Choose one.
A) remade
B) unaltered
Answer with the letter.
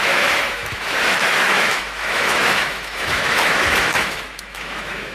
A